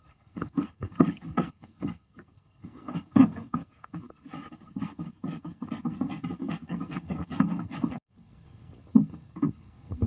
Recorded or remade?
remade